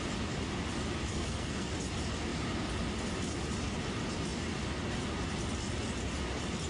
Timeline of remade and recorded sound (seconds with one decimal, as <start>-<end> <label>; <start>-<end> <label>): 0.0-1.1 recorded; 1.1-1.7 remade; 1.7-6.7 recorded